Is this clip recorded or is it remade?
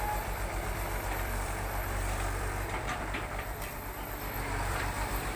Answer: remade